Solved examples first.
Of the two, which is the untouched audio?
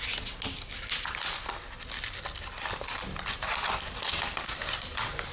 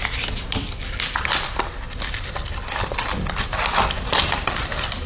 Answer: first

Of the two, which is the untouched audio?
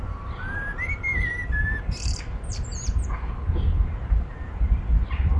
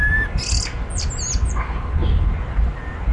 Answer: second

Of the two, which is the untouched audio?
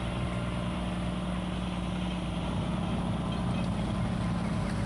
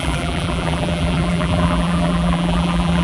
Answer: first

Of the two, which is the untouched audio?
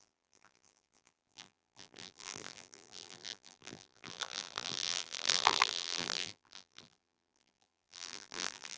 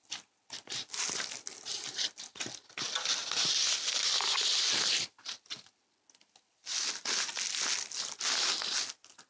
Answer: second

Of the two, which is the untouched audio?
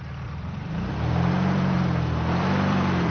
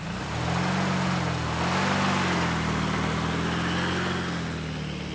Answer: second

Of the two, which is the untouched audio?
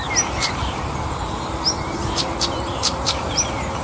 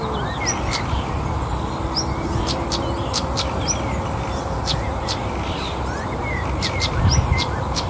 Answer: second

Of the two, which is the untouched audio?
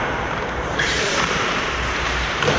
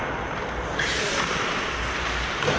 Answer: second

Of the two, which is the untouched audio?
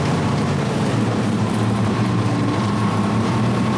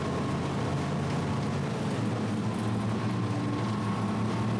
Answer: second